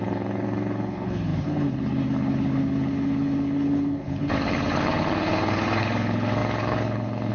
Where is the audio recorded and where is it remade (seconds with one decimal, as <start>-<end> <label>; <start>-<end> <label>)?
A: 0.0-7.3 remade